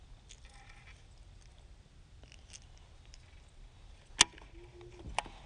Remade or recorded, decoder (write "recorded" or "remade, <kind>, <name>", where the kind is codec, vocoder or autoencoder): recorded